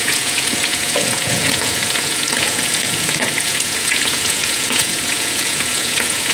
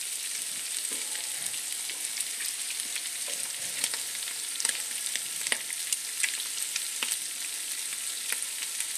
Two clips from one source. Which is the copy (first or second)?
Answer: first